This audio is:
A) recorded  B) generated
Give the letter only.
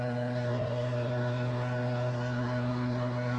B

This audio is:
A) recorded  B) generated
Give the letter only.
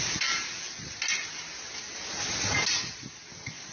A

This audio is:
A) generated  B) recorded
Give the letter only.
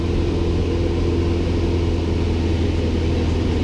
B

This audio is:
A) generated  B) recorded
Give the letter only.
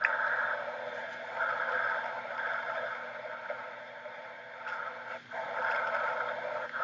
B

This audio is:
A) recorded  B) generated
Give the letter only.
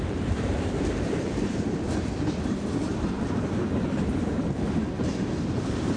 B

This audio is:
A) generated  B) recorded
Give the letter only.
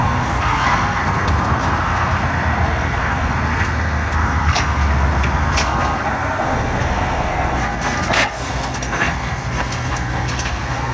A